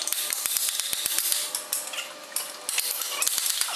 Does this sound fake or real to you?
real